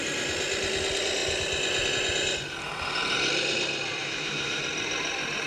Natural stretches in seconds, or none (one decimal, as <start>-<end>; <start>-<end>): 0.0-4.0; 4.6-5.5